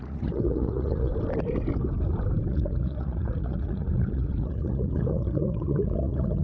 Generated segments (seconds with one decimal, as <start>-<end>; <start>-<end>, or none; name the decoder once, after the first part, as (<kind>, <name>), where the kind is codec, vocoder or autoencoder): 0.0-1.1 (vocoder, Vocos); 2.5-6.4